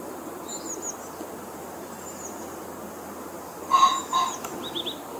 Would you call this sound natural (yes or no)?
yes